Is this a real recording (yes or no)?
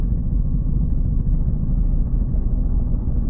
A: no